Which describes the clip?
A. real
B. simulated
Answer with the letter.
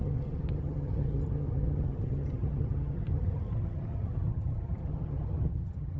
B